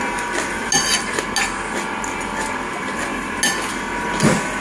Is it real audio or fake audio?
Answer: real